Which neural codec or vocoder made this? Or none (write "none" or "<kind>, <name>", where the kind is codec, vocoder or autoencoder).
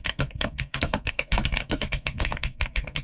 codec, SNAC